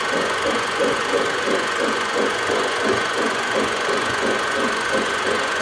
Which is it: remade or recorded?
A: remade